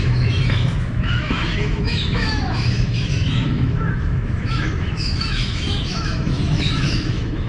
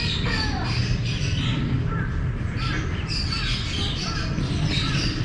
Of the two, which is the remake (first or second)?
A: first